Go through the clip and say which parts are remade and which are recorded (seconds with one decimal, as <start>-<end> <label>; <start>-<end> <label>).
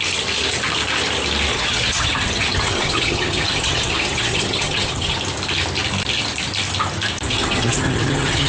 0.0-1.5 recorded; 1.5-5.2 remade; 5.2-7.3 recorded; 7.3-8.5 remade